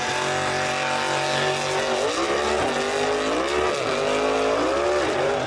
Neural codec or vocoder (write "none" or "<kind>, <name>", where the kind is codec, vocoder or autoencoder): none